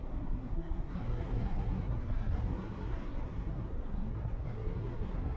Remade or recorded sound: remade